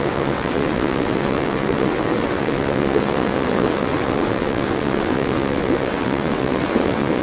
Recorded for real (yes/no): no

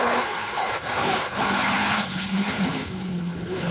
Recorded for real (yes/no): no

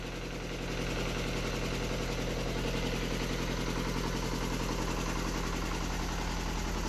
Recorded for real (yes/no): yes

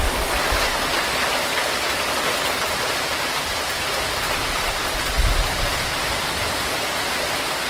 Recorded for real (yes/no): yes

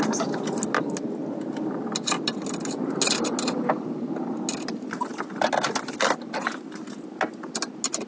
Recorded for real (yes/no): yes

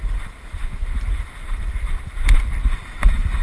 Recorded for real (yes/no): yes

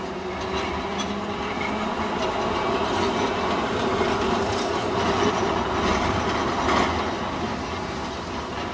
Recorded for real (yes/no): yes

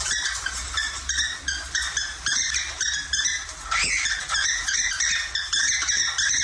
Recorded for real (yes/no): yes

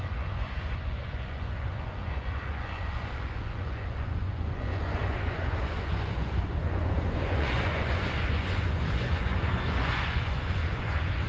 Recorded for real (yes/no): no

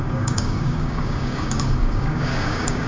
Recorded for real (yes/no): no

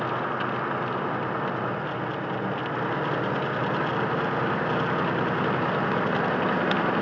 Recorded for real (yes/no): yes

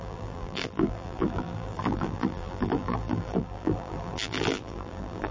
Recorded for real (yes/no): no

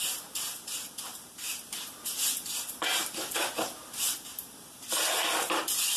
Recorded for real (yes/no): no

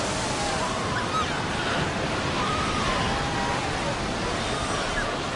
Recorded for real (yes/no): yes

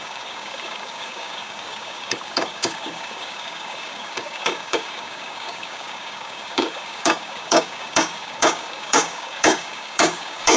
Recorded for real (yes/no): no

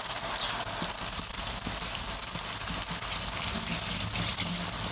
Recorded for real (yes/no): yes